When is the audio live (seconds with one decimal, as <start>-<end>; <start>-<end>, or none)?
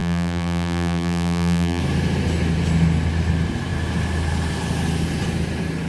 1.8-5.9